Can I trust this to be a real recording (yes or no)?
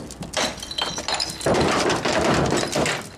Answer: yes